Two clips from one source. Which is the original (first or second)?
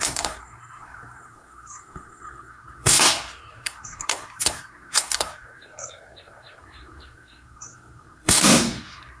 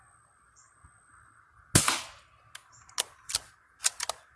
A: second